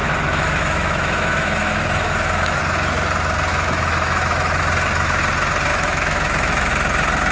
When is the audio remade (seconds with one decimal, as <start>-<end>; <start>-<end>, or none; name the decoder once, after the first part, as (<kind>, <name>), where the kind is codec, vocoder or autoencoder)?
0.0-2.6 (autoencoder, DAC-VAE); 3.5-4.6; 5.7-6.7